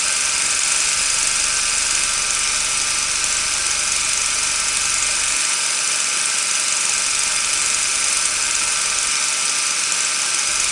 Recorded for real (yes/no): yes